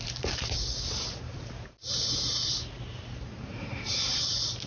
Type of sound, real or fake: fake